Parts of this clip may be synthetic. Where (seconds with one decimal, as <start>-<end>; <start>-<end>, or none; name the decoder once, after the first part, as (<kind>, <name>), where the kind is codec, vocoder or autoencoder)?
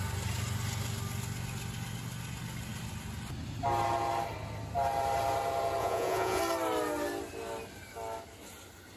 5.8-6.4 (vocoder, Vocos)